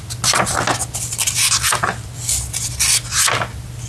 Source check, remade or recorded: recorded